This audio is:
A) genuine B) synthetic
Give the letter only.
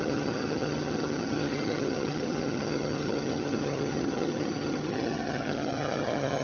B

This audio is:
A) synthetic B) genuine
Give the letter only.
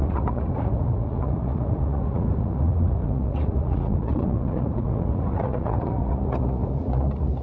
A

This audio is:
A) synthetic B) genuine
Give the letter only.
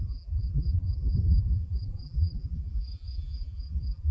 A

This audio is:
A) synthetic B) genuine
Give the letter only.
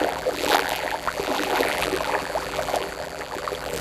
A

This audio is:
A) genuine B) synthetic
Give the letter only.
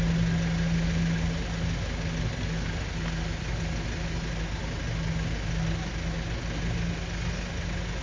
A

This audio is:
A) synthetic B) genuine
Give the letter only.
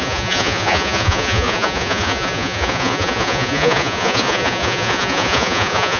A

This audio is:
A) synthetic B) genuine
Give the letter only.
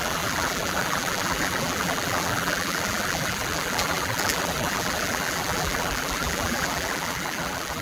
A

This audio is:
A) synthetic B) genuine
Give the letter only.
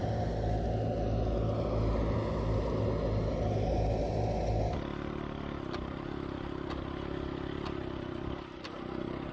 B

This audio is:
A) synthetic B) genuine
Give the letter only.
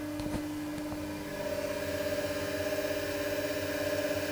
B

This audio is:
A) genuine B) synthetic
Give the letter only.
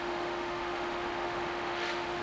B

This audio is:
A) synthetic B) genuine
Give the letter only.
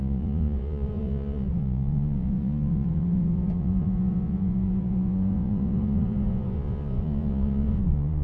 A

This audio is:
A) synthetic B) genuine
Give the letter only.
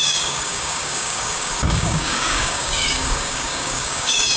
A